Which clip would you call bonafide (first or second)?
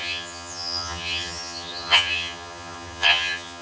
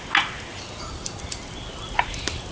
second